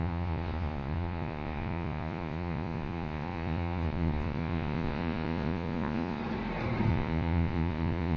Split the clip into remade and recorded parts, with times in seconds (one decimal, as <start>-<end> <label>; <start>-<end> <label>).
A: 0.0-6.2 remade; 6.2-6.9 recorded; 6.9-8.2 remade